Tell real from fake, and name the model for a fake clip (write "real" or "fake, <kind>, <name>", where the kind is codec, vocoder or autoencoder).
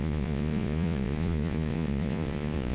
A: fake, vocoder, Vocos